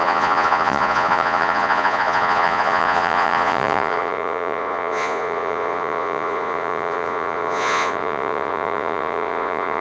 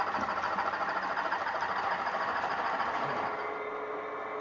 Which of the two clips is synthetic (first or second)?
first